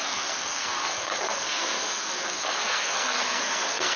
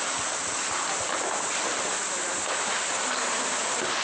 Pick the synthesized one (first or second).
first